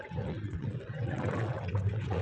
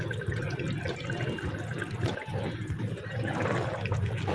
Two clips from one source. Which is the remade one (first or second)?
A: first